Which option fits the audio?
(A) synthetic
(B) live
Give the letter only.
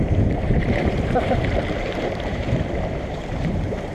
A